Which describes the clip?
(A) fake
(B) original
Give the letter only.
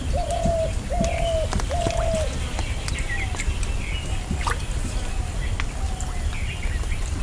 B